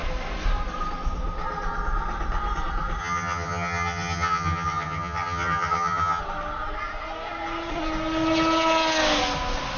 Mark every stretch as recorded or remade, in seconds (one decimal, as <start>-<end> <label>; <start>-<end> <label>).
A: 0.0-3.0 recorded; 3.0-6.2 remade; 6.2-9.8 recorded